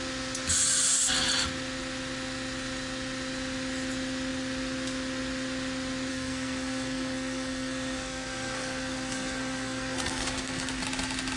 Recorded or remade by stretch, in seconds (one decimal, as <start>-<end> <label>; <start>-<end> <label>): 0.0-6.1 recorded; 6.1-10.8 remade; 10.8-11.4 recorded